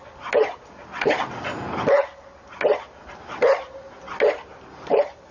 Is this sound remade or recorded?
recorded